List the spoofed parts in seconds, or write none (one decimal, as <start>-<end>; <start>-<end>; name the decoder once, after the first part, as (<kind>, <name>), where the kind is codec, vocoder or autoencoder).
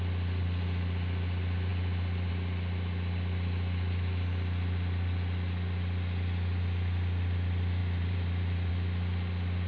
7.8-8.7 (vocoder, BigVGAN v2)